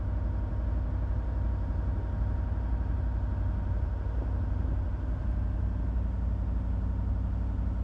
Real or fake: real